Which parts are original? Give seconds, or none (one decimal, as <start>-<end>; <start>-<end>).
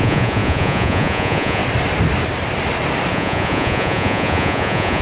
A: 1.6-3.1